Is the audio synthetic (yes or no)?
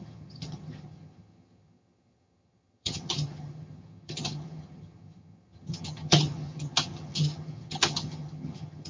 yes